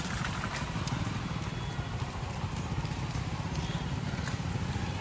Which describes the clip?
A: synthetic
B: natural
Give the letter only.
B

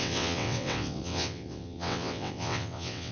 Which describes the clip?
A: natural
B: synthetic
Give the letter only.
B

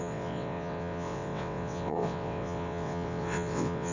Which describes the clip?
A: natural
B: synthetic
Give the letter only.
B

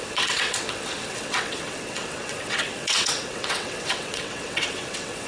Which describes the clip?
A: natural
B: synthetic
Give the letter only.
B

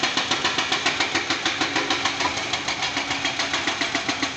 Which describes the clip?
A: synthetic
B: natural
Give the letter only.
B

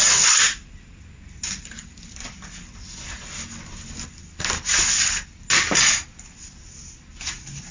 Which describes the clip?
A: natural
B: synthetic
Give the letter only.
A